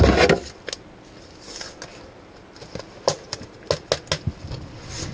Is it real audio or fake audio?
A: real